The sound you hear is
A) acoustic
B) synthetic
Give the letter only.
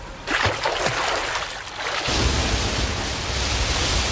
A